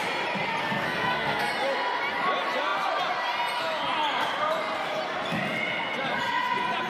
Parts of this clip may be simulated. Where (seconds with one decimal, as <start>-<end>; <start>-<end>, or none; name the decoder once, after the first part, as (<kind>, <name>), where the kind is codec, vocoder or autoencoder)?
0.6-1.5 (codec, SNAC)